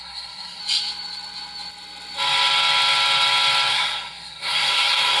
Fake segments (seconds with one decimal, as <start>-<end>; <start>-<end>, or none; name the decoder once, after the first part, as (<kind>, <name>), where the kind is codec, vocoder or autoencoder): 0.0-0.6 (codec, SNAC); 3.7-5.2